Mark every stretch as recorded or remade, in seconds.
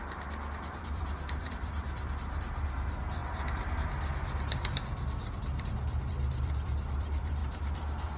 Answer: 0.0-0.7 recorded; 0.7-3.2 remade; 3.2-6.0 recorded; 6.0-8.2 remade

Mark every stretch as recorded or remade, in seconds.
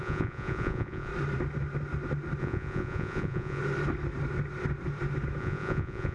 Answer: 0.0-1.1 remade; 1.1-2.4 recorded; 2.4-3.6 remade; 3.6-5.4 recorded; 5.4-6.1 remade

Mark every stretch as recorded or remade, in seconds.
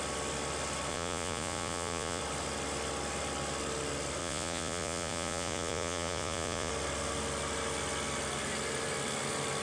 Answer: 0.0-0.9 recorded; 0.9-2.2 remade; 2.2-4.2 recorded; 4.2-6.7 remade; 6.7-9.6 recorded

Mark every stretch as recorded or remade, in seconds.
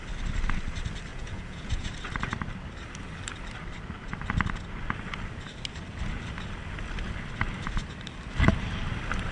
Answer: 0.0-1.1 recorded; 1.1-1.9 remade; 1.9-9.3 recorded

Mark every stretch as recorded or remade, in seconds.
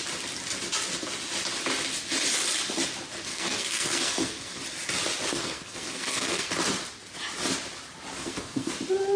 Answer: 0.0-3.3 recorded; 3.3-4.6 remade; 4.6-5.3 recorded; 5.3-6.5 remade; 6.5-8.1 recorded; 8.1-8.7 remade; 8.7-9.2 recorded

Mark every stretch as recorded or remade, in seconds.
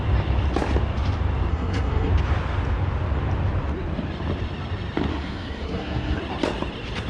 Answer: 0.0-1.5 recorded; 1.5-2.1 remade; 2.1-5.1 recorded; 5.1-6.2 remade; 6.2-7.1 recorded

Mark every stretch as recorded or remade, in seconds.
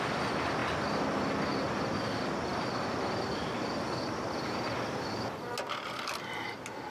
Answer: 0.0-6.9 recorded